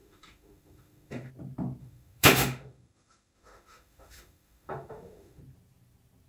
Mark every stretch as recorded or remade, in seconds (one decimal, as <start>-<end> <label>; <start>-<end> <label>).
0.0-1.3 remade; 1.3-1.8 recorded; 1.8-5.4 remade; 5.4-6.3 recorded